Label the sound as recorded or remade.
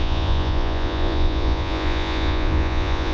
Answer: remade